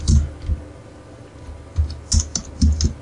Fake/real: real